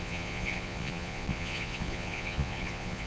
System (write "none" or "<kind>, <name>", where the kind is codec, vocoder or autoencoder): vocoder, Vocos